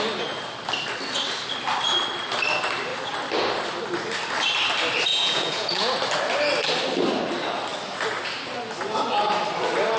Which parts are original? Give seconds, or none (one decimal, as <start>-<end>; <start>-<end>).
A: 0.0-5.1; 5.9-10.0